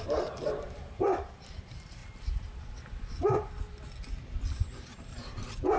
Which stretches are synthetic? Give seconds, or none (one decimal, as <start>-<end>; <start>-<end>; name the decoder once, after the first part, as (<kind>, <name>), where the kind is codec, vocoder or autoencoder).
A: 0.0-2.0 (vocoder, BigVGAN v2); 4.1-5.8